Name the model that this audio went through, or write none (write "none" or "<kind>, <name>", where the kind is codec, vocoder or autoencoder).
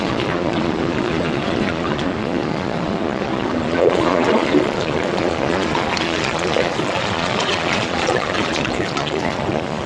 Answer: vocoder, Vocos